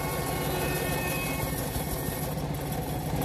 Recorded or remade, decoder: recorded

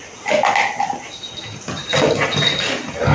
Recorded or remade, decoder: recorded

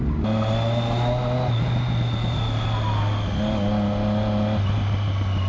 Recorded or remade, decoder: recorded